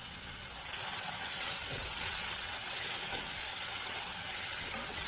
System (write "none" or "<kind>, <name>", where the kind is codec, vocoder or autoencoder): vocoder, WaveNeXt